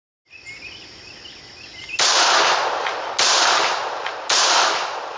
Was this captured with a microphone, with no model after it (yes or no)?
yes